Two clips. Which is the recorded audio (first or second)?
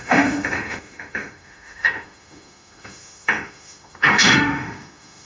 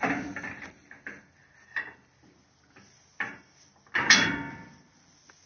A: second